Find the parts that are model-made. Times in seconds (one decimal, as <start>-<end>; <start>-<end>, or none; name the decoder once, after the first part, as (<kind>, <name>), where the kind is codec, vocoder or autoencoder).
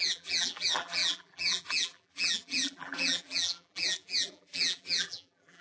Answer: 0.0-5.6 (vocoder, BigVGAN v2)